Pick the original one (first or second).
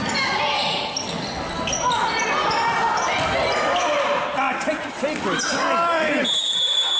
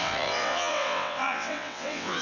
first